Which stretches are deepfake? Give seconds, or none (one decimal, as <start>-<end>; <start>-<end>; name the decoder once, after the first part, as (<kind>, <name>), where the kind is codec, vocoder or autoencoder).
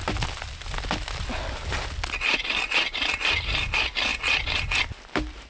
none